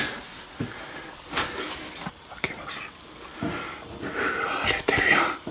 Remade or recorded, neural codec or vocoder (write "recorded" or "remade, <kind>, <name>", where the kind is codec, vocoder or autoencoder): recorded